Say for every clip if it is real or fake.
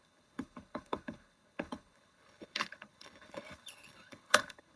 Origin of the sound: fake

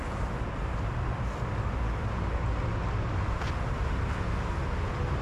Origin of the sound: real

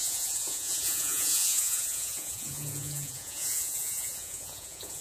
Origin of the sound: fake